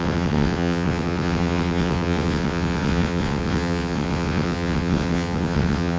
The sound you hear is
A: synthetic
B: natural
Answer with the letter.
A